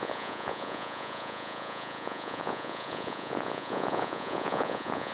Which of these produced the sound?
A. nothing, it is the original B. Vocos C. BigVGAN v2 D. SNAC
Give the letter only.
B